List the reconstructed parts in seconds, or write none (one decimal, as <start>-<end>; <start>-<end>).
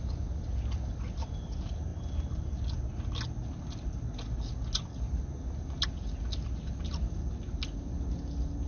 none